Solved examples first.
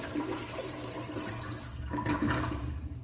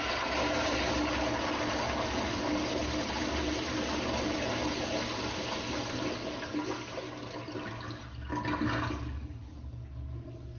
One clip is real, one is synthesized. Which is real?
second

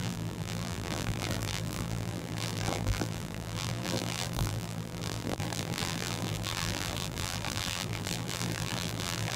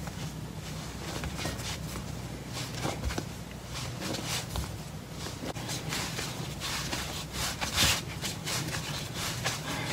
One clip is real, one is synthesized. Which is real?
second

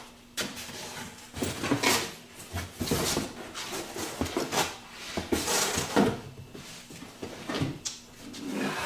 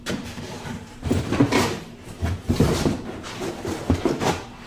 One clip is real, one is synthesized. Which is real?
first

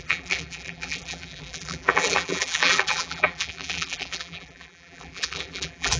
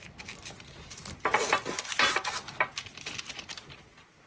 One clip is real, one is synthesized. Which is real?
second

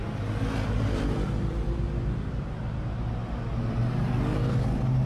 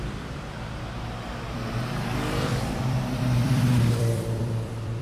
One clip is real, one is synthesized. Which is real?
first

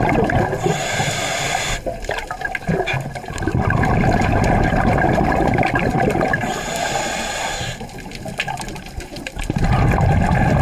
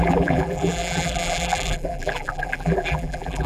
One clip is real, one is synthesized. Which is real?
first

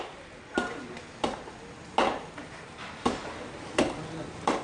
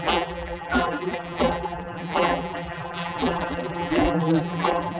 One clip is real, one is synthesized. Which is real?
first